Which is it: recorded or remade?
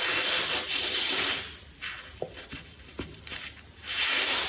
recorded